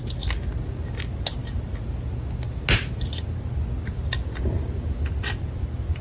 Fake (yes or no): no